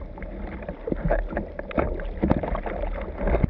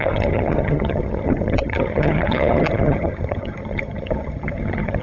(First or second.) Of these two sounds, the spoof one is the second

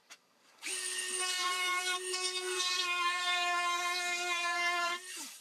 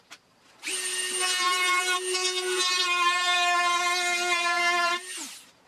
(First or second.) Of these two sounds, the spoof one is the first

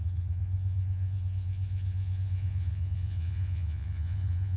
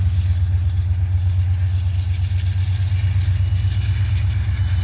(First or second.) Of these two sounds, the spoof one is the first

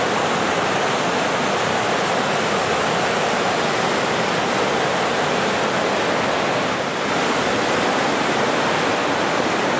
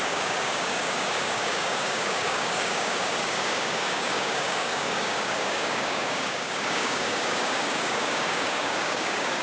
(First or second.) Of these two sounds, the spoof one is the second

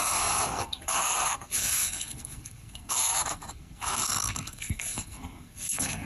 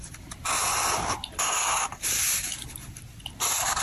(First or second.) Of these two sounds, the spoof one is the first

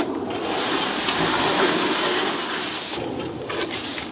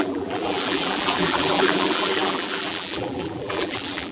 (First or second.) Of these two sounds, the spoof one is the second